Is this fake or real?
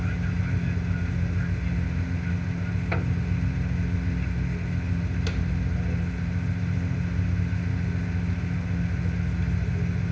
real